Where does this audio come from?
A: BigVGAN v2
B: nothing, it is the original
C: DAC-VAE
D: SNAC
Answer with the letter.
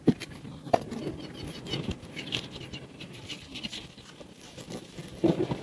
B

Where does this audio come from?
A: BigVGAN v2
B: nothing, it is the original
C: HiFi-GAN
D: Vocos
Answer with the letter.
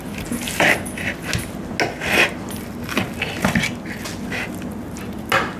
B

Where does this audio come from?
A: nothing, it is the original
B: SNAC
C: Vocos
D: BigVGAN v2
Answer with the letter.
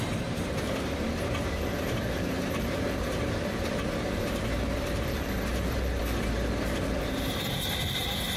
D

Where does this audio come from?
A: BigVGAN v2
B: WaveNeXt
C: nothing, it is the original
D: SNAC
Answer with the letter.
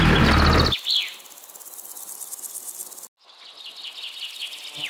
C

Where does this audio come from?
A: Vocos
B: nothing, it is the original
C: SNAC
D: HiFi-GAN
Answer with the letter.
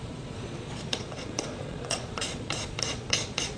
A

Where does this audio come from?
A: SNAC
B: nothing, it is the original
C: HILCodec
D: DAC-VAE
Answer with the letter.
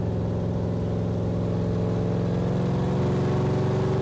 B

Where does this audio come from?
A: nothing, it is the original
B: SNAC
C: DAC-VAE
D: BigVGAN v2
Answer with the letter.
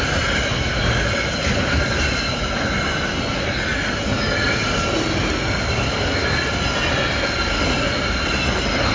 A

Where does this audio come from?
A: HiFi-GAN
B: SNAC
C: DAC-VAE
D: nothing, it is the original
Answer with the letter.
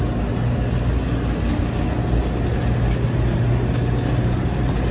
D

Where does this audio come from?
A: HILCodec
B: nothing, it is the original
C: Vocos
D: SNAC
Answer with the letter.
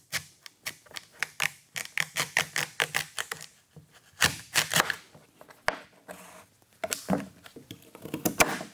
B